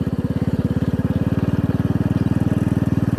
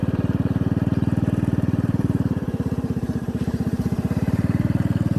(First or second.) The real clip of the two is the first